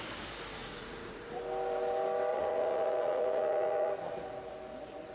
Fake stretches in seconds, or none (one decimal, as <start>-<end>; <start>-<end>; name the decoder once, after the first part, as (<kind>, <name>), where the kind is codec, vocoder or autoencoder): 0.6-1.4 (vocoder, Vocos); 2.3-3.9